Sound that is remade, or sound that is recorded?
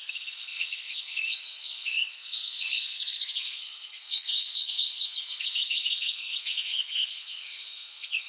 remade